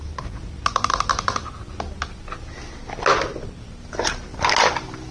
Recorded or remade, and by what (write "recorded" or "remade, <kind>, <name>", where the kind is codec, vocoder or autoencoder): recorded